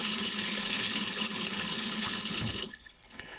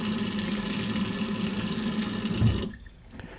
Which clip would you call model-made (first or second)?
first